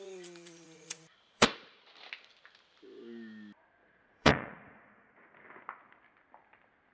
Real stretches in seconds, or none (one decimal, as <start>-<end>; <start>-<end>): 1.8-3.8; 5.1-6.9